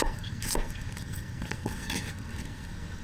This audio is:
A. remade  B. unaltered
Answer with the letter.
A